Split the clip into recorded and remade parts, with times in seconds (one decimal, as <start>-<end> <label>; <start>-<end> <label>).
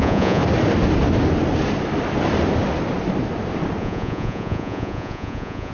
0.0-0.4 remade; 0.4-3.8 recorded; 3.8-5.7 remade